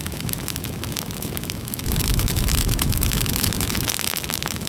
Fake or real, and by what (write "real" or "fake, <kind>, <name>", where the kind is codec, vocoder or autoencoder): fake, autoencoder, DAC-VAE